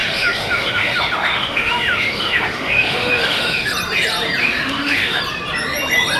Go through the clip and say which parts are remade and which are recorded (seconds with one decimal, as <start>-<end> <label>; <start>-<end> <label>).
0.0-3.7 remade; 3.7-4.4 recorded; 4.4-5.2 remade; 5.2-6.2 recorded